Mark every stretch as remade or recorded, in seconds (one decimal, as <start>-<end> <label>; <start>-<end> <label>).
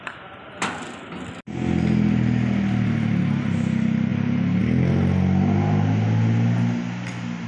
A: 0.0-7.5 recorded